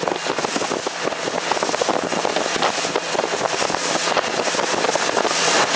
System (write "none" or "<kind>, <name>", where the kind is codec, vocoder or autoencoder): none